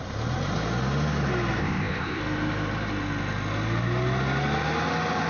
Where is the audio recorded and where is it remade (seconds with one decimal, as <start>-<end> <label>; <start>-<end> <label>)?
0.0-1.6 recorded; 1.6-2.2 remade; 2.2-5.3 recorded

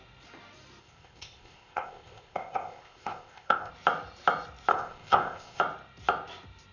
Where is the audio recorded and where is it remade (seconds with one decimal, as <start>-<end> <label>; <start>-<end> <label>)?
0.0-0.8 recorded; 0.8-3.7 remade; 3.7-4.7 recorded; 4.7-5.6 remade; 5.6-6.7 recorded

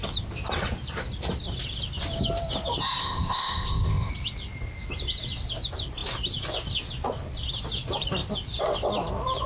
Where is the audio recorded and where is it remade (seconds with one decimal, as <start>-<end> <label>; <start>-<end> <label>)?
0.0-3.0 recorded; 3.0-4.1 remade; 4.1-9.5 recorded

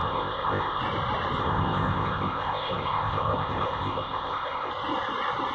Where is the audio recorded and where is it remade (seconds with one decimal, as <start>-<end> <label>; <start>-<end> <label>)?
0.0-0.8 remade; 0.8-1.4 recorded; 1.4-4.7 remade; 4.7-5.5 recorded

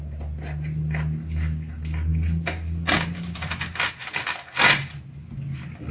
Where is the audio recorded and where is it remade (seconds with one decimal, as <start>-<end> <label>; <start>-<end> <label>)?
0.0-5.9 recorded

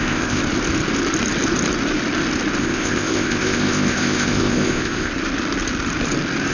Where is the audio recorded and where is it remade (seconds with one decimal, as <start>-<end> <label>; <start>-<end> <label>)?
0.0-0.4 remade; 0.4-2.6 recorded; 2.6-5.1 remade; 5.1-6.5 recorded

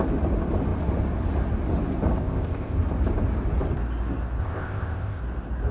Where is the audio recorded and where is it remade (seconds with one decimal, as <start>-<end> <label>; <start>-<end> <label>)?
0.0-2.2 recorded; 2.2-2.8 remade; 2.8-4.4 recorded; 4.4-5.2 remade; 5.2-5.7 recorded